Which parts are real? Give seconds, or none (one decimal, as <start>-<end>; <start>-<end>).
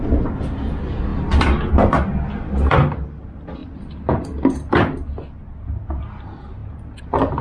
0.0-1.1; 1.7-3.6; 4.7-7.4